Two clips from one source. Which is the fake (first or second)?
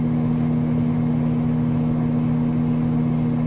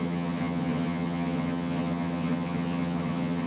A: second